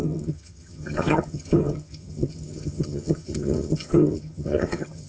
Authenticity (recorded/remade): remade